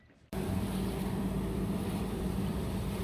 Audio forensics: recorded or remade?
remade